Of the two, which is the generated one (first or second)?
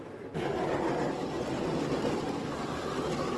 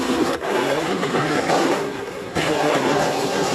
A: second